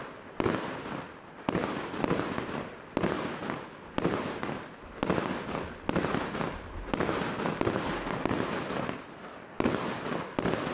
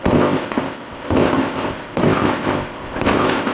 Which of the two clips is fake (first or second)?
second